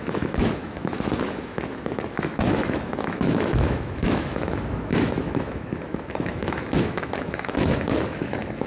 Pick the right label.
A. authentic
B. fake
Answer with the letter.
B